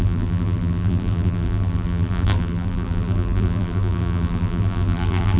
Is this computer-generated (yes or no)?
yes